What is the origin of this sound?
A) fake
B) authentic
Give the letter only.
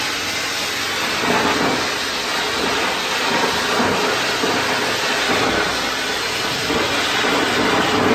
B